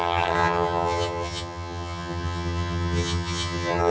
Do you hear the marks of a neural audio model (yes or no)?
yes